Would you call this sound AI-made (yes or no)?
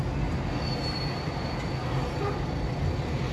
no